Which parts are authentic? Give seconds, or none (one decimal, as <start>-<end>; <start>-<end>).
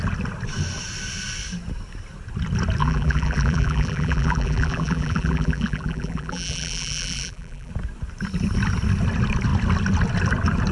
0.0-2.8; 7.7-10.7